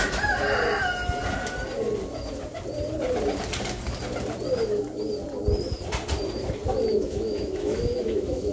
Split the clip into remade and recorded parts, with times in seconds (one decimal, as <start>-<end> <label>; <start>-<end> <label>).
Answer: 0.0-6.9 recorded; 6.9-8.5 remade

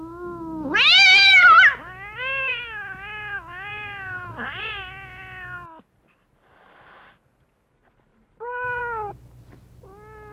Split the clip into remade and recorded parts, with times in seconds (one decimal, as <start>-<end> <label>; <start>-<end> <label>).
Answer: 0.0-3.7 recorded; 3.7-4.6 remade; 4.6-8.1 recorded; 8.1-8.8 remade; 8.8-10.3 recorded

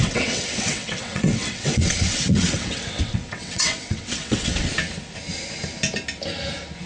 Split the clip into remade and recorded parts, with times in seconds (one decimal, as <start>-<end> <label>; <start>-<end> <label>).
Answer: 0.0-4.7 remade; 4.7-6.9 recorded